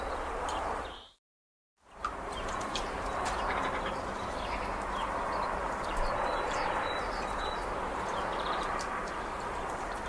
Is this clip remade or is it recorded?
remade